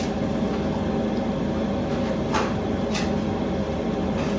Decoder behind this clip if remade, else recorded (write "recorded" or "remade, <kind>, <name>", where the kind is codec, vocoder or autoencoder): recorded